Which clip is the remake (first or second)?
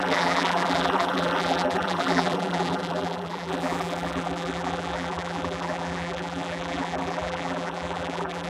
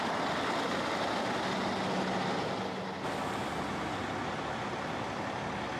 first